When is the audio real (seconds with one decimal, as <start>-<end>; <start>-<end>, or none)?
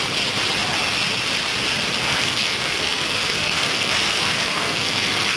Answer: 0.0-2.0